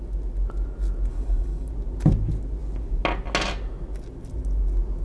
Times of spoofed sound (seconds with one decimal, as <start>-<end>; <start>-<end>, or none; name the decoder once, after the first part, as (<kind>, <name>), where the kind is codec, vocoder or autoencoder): 1.1-1.7 (codec, HILCodec)